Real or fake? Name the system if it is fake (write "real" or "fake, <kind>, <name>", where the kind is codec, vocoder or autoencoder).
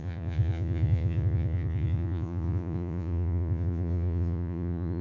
fake, vocoder, Vocos